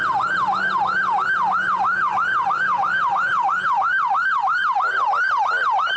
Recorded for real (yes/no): yes